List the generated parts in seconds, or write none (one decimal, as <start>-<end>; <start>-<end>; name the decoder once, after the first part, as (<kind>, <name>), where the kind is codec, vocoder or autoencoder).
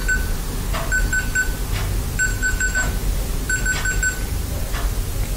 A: 2.3-2.9 (autoencoder, DAC-VAE)